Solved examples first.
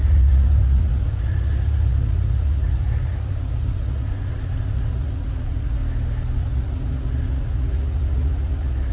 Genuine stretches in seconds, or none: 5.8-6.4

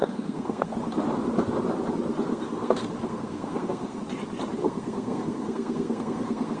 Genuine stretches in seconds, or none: 0.7-2.3; 4.0-4.6